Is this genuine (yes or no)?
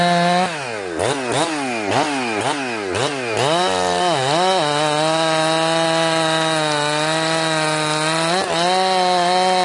yes